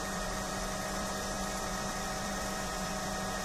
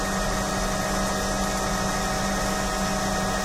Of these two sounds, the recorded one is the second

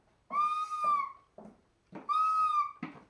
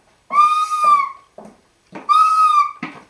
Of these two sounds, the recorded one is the first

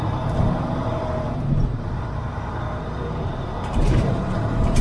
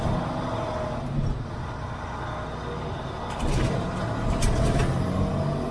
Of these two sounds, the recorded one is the second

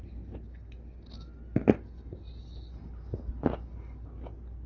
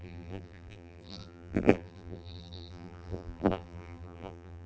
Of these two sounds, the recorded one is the first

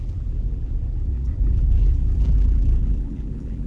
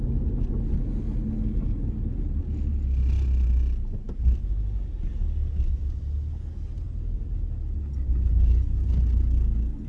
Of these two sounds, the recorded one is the second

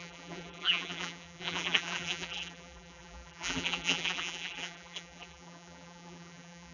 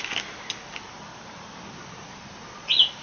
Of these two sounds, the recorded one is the second